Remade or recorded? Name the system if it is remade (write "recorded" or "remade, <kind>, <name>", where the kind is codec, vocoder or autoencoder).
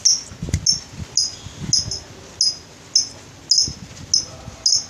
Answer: recorded